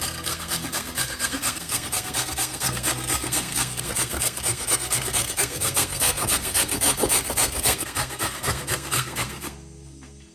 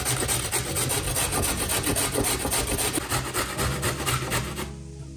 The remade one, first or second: first